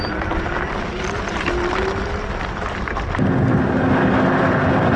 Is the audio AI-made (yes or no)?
no